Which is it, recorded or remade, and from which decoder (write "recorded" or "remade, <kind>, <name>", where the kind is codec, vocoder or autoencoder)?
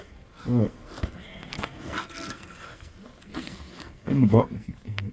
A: remade, codec, SNAC